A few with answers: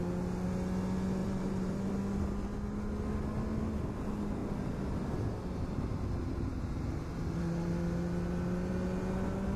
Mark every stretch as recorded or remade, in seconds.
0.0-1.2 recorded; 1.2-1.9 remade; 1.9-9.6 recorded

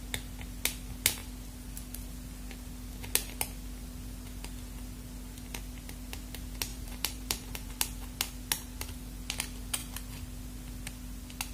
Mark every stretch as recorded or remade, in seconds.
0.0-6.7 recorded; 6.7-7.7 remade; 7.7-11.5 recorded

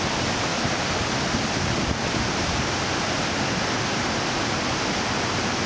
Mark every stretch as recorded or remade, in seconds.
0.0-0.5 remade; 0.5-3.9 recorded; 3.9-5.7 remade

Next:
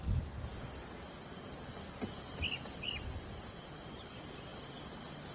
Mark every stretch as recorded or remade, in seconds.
0.0-5.3 recorded